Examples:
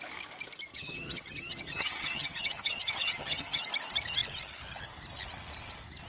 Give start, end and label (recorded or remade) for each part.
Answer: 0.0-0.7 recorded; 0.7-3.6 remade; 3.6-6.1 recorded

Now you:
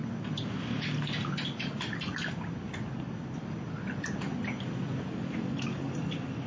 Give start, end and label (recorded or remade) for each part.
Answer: 0.0-6.5 recorded

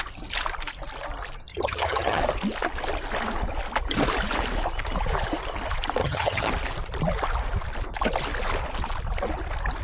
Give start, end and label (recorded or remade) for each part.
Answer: 0.0-1.5 recorded; 1.5-2.2 remade; 2.2-6.0 recorded; 6.0-6.5 remade; 6.5-9.8 recorded

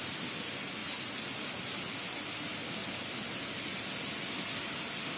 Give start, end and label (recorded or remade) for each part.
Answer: 0.0-5.2 recorded

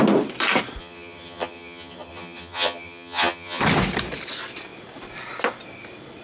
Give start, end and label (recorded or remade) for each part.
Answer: 0.0-0.8 recorded; 0.8-3.6 remade; 3.6-6.2 recorded

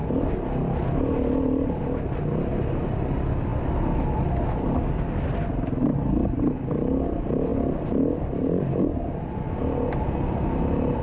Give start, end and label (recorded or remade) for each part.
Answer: 0.0-11.0 recorded

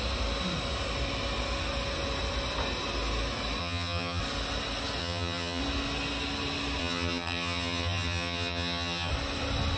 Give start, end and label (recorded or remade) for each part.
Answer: 0.0-3.6 recorded; 3.6-4.2 remade; 4.2-5.0 recorded; 5.0-5.6 remade; 5.6-6.8 recorded; 6.8-9.1 remade; 9.1-9.8 recorded

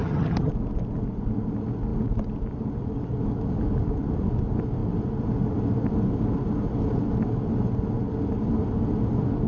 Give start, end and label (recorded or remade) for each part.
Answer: 0.0-0.5 remade; 0.5-9.5 recorded